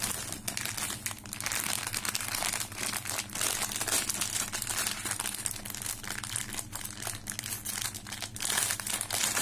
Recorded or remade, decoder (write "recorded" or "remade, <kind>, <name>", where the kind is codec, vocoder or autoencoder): recorded